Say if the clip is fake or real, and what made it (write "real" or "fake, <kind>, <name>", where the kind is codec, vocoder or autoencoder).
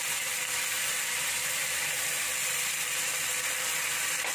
fake, vocoder, BigVGAN v2